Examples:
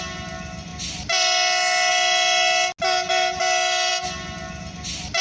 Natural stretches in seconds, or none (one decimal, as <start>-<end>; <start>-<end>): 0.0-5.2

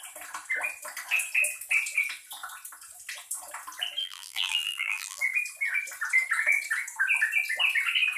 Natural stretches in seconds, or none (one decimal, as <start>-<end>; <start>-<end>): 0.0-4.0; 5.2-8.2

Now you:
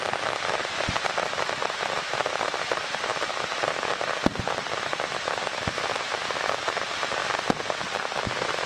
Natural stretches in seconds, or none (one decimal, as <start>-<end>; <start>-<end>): 0.0-1.6; 3.3-5.5; 6.6-8.7

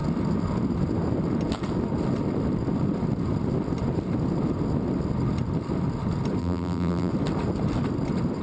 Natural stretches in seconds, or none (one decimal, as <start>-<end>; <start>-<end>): 0.0-6.4; 7.1-8.4

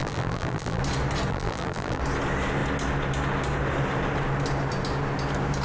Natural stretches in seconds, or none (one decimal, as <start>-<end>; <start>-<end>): 0.8-1.3; 2.0-5.6

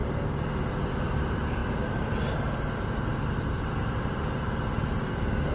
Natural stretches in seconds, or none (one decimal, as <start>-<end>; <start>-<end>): 0.0-0.7